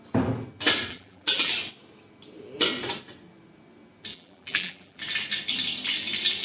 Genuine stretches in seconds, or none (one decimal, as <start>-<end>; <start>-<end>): 0.0-0.9; 1.5-4.1; 5.0-6.4